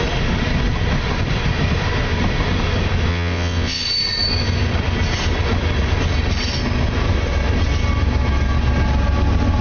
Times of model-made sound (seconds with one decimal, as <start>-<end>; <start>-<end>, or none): 3.1-3.8